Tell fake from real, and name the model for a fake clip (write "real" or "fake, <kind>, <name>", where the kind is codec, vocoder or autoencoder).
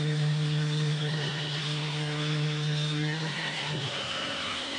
fake, codec, SNAC